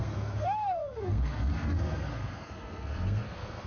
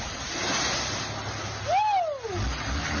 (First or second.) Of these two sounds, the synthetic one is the first